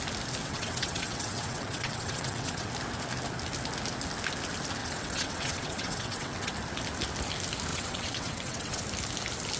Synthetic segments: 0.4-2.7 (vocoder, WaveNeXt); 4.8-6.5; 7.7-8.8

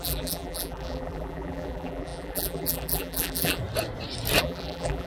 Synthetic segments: 0.0-3.6 (vocoder, BigVGAN v2); 4.4-5.1

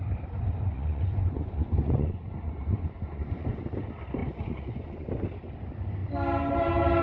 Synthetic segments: 0.7-3.6 (vocoder, Vocos); 4.2-5.1

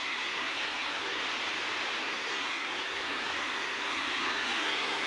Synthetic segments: 0.0-1.2 (codec, SNAC); 2.0-5.1

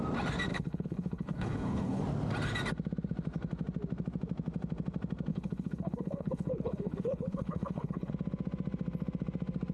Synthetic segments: 0.5-2.0 (codec, HILCodec); 5.3-8.1

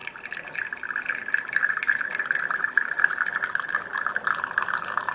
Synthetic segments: 0.0-2.0 (vocoder, BigVGAN v2); 3.9-4.5

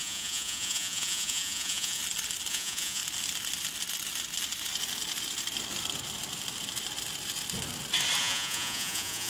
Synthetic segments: 0.0-2.0 (vocoder, Vocos); 2.5-3.0; 8.2-9.3